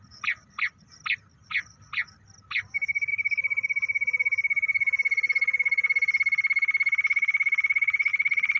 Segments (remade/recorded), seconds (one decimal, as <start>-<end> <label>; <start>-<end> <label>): 0.0-8.6 recorded